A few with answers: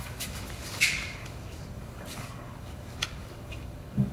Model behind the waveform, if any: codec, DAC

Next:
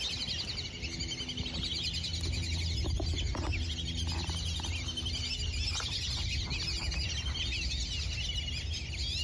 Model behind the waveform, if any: none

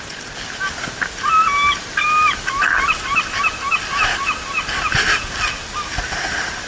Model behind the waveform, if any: none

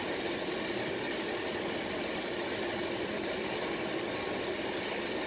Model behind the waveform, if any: none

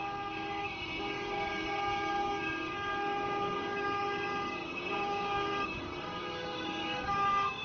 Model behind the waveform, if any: codec, DAC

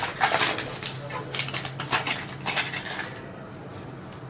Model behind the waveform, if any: none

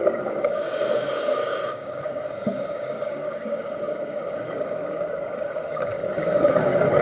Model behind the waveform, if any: codec, DAC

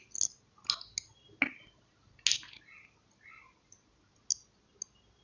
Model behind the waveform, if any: none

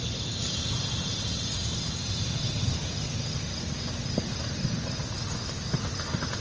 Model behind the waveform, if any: none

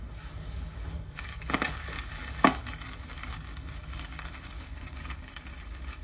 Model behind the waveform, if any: codec, DAC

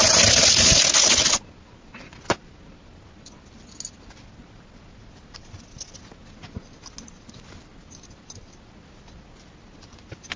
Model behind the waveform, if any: none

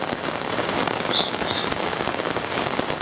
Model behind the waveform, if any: codec, DAC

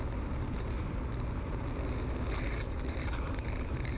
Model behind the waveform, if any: none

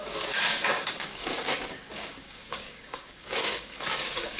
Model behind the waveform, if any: codec, DAC